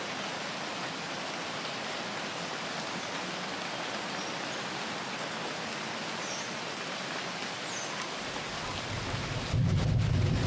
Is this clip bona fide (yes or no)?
yes